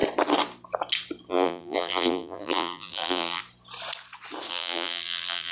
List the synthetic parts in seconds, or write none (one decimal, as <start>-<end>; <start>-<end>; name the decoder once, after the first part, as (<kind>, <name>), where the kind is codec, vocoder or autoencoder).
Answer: 1.3-3.4 (vocoder, BigVGAN v2); 4.5-5.5